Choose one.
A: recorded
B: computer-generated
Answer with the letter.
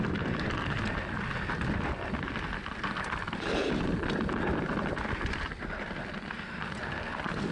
A